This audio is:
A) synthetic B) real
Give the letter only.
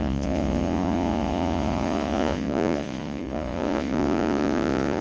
A